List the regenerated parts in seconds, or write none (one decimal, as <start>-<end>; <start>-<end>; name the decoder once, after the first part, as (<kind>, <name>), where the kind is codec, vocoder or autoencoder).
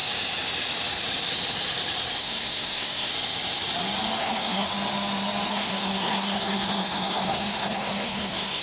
2.2-3.1 (codec, SNAC); 4.2-4.7; 5.5-8.6